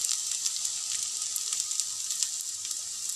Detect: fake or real real